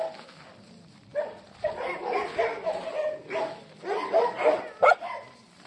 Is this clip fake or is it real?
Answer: real